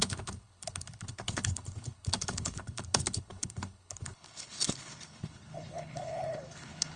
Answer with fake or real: fake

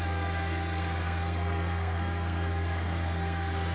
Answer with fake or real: fake